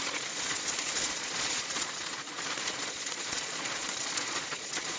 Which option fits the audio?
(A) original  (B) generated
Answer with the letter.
B